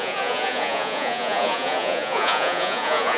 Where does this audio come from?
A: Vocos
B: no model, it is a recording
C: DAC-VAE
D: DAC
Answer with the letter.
A